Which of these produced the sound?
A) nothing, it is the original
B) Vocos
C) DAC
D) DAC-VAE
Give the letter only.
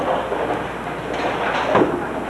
A